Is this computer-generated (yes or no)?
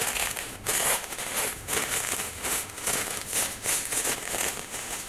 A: yes